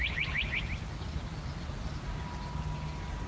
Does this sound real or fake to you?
real